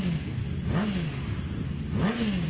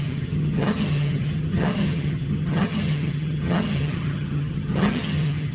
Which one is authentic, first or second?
first